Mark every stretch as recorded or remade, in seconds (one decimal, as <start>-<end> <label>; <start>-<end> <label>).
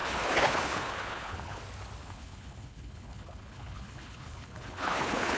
0.0-1.6 remade; 1.6-2.0 recorded; 2.0-5.4 remade